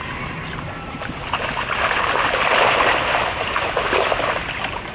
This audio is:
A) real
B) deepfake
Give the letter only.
A